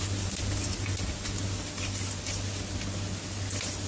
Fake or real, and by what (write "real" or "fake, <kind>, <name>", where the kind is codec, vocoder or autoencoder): real